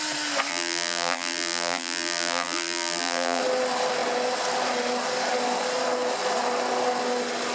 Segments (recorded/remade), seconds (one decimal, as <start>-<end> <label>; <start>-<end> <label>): 0.0-0.5 recorded; 0.5-3.4 remade; 3.4-7.5 recorded